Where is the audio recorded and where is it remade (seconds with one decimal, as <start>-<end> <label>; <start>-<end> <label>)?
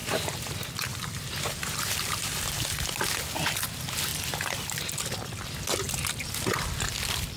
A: 0.0-0.5 remade; 0.5-0.9 recorded; 0.9-2.6 remade; 2.6-7.4 recorded